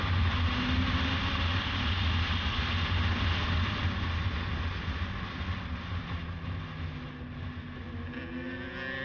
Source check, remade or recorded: recorded